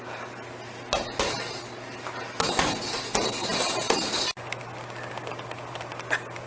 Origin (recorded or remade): recorded